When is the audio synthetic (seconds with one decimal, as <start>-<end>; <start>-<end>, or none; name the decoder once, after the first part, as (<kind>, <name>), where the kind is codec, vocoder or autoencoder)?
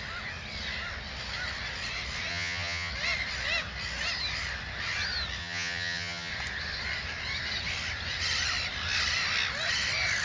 2.3-2.9 (vocoder, HiFi-GAN); 5.4-6.3